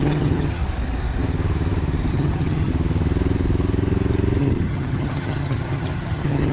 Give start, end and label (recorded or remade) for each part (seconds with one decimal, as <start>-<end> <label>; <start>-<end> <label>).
0.0-0.6 remade; 0.6-2.1 recorded; 2.1-2.7 remade; 2.7-4.4 recorded; 4.4-6.5 remade